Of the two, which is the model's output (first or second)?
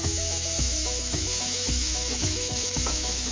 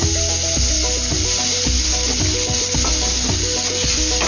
first